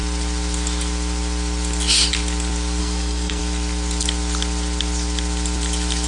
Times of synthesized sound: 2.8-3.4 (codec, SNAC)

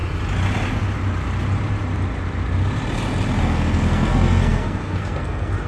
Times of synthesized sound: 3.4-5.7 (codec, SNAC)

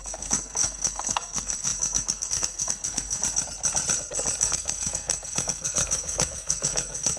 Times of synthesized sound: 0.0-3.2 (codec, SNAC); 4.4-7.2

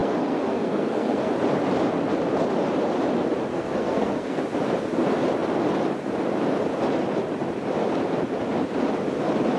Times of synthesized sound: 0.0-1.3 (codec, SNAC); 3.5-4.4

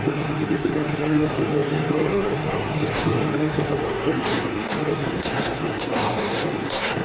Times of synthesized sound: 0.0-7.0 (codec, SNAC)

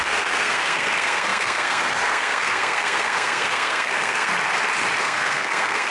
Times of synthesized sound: 0.0-4.3 (codec, SNAC); 5.0-5.9